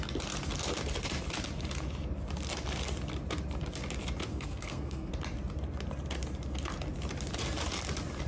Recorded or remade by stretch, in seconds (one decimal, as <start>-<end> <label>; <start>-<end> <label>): 0.0-4.3 recorded; 4.3-5.1 remade; 5.1-8.3 recorded